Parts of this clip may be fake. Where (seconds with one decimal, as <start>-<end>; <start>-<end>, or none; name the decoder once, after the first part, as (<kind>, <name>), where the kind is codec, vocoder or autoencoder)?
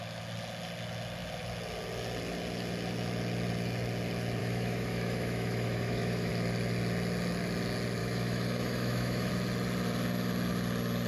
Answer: 4.4-6.3 (autoencoder, DAC-VAE); 8.0-9.3